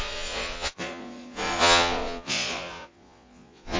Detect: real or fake fake